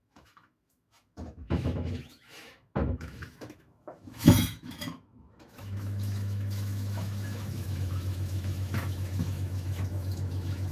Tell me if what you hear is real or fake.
fake